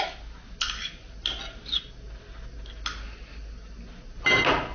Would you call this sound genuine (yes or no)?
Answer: yes